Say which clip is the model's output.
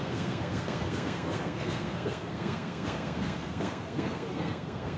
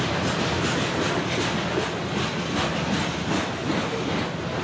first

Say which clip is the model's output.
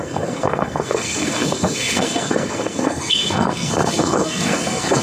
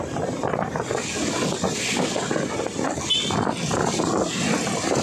first